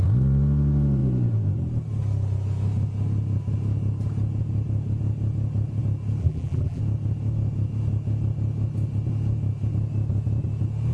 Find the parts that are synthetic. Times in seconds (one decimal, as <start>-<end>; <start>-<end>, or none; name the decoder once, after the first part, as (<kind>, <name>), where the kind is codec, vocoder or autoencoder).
6.2-6.8 (vocoder, BigVGAN v2)